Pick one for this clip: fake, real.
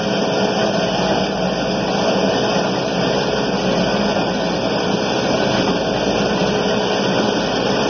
real